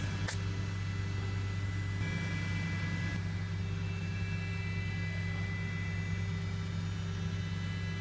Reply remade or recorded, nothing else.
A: recorded